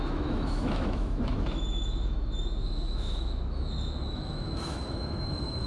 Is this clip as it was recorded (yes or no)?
no